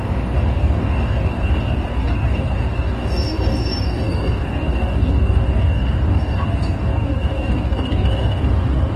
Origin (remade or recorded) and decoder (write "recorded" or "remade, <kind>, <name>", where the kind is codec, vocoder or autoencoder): remade, codec, DAC